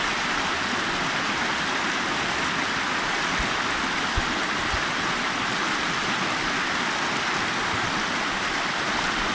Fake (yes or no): no